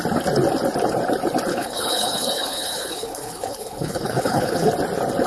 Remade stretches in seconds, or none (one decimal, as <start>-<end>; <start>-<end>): 1.5-4.7